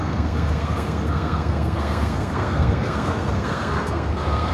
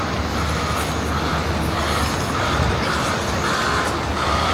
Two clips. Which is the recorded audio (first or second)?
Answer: second